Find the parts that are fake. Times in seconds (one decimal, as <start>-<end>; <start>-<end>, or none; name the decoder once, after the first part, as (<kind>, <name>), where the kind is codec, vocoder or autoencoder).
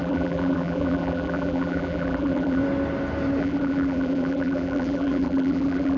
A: 0.0-2.6 (vocoder, BigVGAN v2); 3.4-6.0